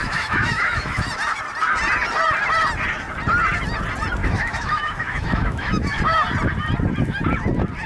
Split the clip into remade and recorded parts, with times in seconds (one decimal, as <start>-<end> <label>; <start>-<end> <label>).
0.0-1.1 remade; 1.1-4.2 recorded; 4.2-6.0 remade; 6.0-7.9 recorded